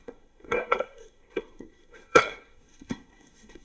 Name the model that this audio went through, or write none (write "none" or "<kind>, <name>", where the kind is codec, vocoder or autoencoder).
codec, SNAC